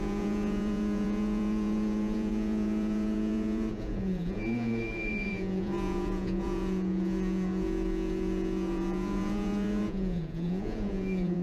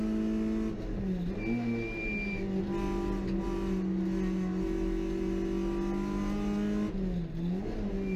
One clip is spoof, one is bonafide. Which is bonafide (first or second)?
second